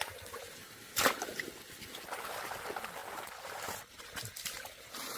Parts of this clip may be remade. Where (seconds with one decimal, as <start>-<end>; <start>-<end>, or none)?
none

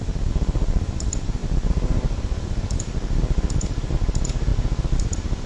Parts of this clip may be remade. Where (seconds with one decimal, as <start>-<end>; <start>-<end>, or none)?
4.5-5.5